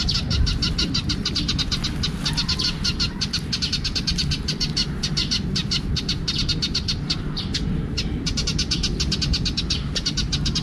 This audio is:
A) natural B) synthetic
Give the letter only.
A